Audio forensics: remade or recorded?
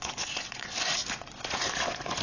remade